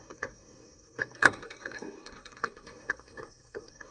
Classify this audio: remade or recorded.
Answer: remade